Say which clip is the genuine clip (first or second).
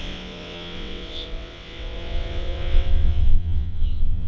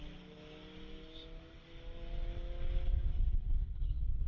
second